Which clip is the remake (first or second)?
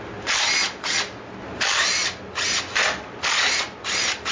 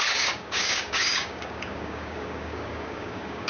second